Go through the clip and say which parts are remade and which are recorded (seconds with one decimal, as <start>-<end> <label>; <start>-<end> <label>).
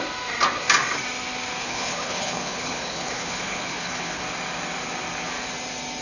0.0-1.6 recorded; 1.6-4.2 remade; 4.2-6.0 recorded